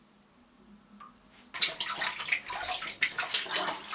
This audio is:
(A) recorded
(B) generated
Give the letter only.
A